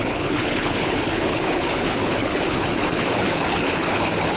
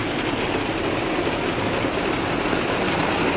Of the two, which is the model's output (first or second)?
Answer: first